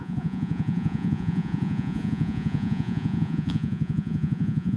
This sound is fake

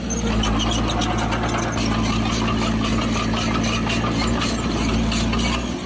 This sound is real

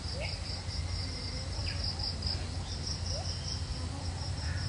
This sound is real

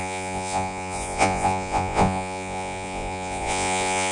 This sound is fake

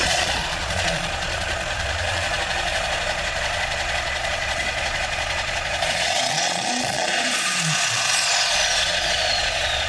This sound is fake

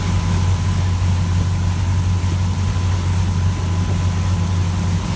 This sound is real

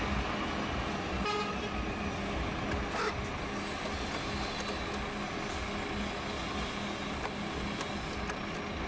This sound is real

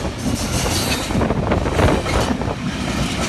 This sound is real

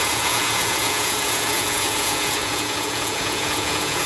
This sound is fake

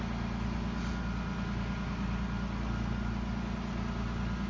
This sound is real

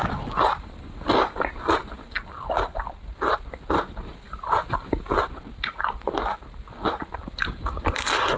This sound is real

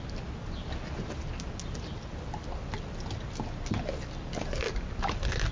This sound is real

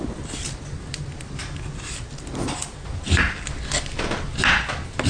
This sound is real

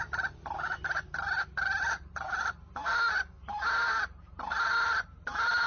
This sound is real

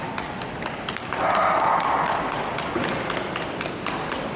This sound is real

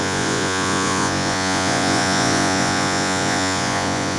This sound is fake